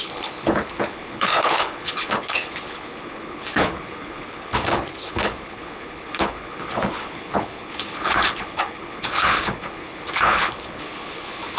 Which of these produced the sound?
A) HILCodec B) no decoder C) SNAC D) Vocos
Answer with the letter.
A